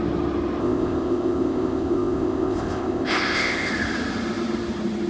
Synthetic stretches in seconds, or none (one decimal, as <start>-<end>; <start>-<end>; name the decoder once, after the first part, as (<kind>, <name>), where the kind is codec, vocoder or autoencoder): 0.6-3.7 (codec, ZipCodec)